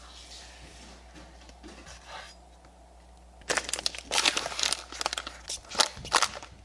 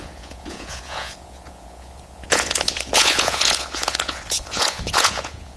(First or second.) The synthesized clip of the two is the second